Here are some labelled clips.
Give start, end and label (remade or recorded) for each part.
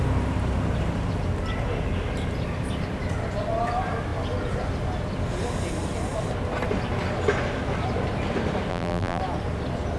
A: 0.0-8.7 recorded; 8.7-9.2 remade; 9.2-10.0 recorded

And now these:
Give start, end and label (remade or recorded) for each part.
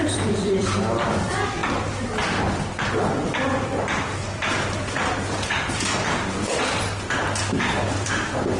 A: 0.0-1.6 remade; 1.6-3.5 recorded; 3.5-8.6 remade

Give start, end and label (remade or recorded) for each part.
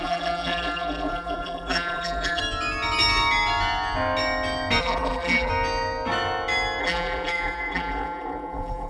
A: 0.0-2.4 remade; 2.4-4.8 recorded; 4.8-5.5 remade; 5.5-6.8 recorded; 6.8-8.9 remade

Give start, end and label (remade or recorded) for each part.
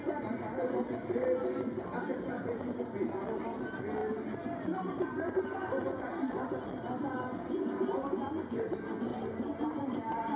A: 0.0-2.1 recorded; 2.1-2.8 remade; 2.8-9.1 recorded; 9.1-10.4 remade